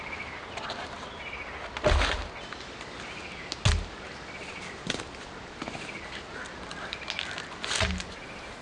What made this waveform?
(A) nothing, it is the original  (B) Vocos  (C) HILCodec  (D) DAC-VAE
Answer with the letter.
A